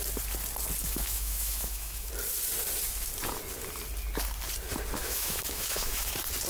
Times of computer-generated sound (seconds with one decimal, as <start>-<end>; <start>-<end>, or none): 0.8-2.1; 5.0-6.1